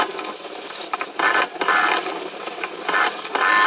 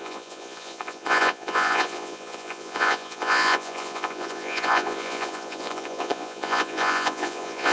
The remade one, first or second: second